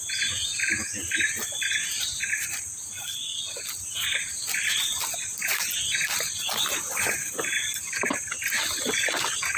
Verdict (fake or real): real